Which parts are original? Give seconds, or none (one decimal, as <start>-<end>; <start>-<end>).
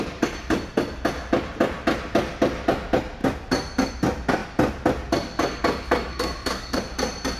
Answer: 0.0-6.1; 6.8-7.4